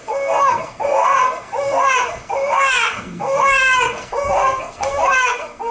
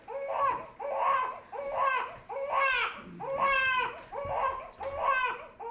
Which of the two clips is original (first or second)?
second